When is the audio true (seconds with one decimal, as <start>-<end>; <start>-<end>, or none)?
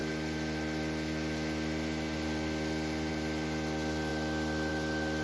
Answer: 0.0-5.2